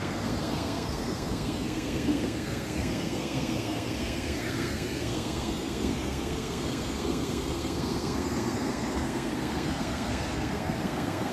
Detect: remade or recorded remade